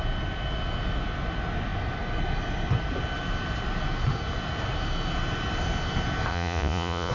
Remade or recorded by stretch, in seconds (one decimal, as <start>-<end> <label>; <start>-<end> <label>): 0.0-6.3 recorded; 6.3-7.1 remade